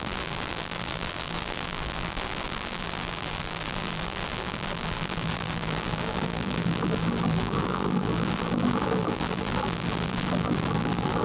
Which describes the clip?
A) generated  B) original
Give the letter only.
A